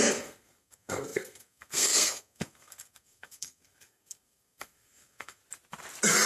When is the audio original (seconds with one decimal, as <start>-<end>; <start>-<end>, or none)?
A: 5.4-6.3